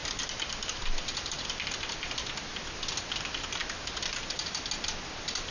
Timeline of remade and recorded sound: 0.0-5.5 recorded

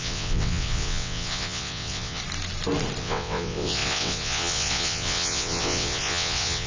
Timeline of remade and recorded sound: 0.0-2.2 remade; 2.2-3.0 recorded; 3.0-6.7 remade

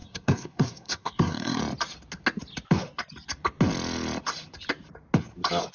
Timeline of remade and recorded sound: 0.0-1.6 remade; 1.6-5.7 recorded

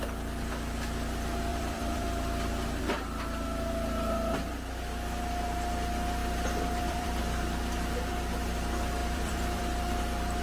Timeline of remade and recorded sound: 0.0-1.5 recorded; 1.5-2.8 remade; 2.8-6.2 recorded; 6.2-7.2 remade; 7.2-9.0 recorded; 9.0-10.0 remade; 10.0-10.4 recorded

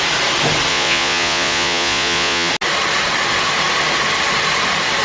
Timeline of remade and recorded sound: 0.0-0.7 recorded; 0.7-2.5 remade; 2.5-5.0 recorded

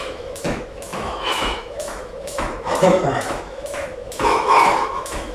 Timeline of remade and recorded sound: 0.0-5.3 remade

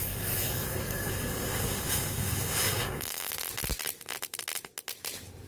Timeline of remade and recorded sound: 0.0-3.3 remade; 3.3-5.5 recorded

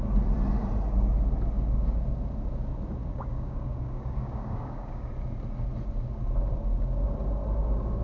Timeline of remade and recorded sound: 0.0-3.0 recorded; 3.0-5.1 remade; 5.1-8.0 recorded